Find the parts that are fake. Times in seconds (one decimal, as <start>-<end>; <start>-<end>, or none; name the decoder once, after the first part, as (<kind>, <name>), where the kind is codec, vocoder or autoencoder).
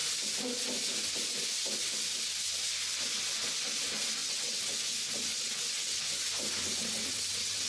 4.2-4.7 (vocoder, WaveNeXt); 5.3-6.0; 6.8-7.7